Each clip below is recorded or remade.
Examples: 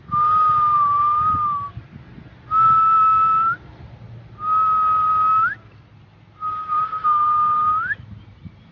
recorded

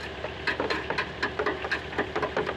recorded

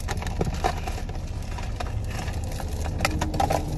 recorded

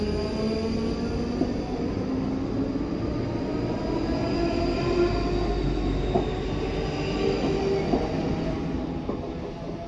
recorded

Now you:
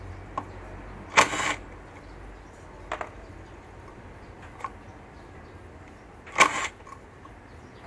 recorded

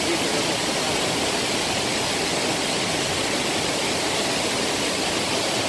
recorded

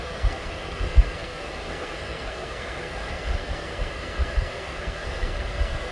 remade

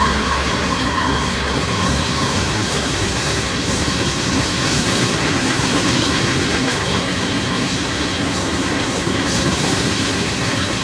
remade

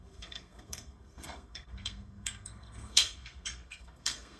remade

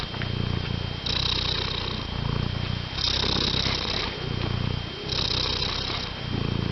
recorded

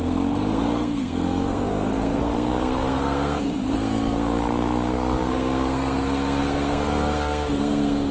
remade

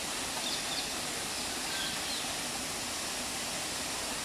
recorded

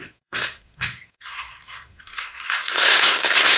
remade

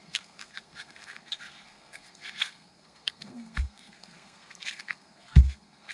remade